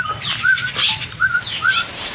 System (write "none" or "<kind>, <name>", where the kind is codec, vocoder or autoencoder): none